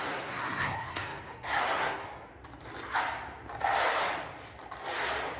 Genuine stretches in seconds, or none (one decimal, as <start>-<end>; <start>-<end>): 2.3-5.4